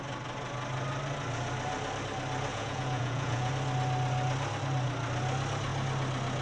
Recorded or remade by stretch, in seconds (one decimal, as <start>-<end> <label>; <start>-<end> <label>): 0.0-2.5 recorded; 2.5-3.5 remade; 3.5-6.4 recorded